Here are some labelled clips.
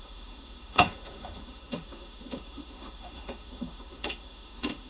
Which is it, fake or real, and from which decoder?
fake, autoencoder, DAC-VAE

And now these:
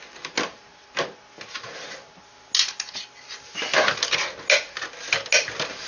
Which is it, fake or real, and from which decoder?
real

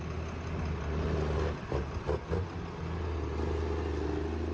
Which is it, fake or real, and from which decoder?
real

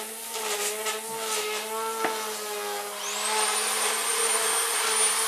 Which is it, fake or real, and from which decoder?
real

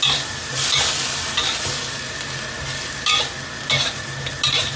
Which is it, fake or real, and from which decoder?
real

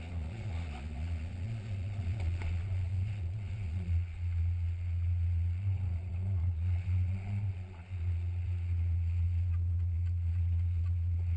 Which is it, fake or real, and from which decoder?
fake, vocoder, Vocos